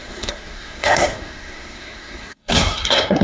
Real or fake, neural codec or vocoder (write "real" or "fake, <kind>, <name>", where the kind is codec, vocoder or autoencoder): fake, codec, SNAC